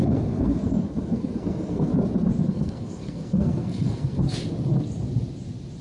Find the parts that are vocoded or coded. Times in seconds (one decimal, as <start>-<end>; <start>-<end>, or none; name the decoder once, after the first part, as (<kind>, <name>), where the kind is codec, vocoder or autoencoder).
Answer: 0.0-1.9 (codec, SNAC); 2.5-4.4